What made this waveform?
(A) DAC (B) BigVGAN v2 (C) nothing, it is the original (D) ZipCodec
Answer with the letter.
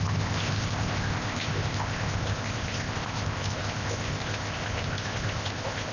D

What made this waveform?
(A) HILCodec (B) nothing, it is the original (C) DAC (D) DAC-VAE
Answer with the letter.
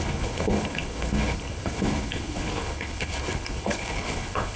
A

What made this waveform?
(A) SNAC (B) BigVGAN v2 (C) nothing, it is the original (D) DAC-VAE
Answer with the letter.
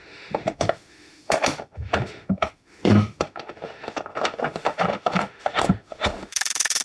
D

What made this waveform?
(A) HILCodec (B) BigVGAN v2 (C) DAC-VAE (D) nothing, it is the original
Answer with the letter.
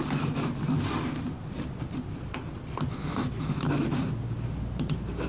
D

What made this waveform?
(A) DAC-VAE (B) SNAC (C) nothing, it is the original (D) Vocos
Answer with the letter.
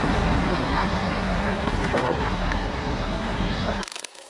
B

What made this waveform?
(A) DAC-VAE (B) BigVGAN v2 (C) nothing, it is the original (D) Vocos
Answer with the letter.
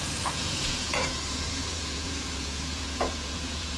D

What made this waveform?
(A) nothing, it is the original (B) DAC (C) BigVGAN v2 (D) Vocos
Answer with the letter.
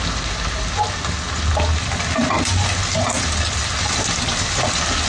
A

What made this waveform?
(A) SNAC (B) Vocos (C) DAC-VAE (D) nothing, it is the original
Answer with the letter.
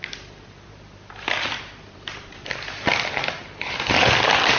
D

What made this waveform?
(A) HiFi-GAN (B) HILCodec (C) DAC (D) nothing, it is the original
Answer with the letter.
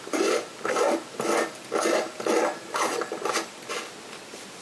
D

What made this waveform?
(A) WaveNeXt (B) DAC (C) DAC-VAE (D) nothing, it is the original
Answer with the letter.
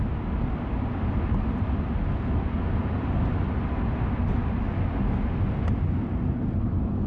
D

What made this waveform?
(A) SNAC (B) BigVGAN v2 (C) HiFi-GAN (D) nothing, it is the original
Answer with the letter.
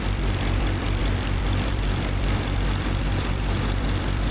B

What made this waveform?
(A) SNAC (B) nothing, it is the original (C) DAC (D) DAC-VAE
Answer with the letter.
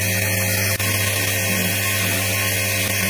B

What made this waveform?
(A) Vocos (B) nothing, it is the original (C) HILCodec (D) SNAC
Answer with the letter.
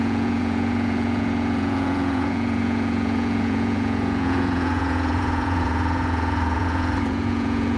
A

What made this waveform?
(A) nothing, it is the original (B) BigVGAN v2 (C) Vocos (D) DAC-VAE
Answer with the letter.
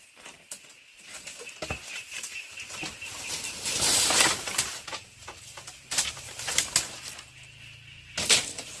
A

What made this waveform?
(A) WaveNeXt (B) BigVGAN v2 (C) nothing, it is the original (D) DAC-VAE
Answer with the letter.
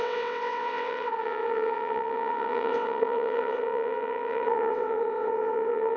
A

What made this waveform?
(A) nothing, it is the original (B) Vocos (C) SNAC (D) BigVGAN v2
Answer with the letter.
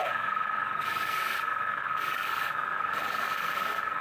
C